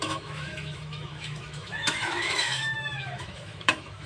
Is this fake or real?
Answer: fake